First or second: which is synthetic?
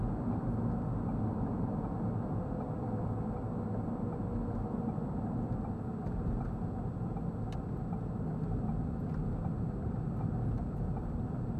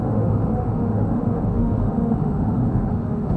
second